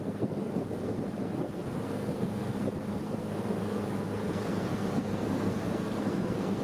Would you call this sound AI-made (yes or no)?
yes